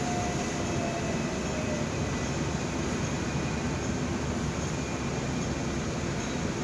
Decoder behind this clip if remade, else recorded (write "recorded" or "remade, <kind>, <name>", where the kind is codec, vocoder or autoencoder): recorded